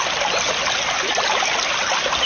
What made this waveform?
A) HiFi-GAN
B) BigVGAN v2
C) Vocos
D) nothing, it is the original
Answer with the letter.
D